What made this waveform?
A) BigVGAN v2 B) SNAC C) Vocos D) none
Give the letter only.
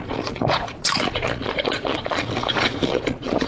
C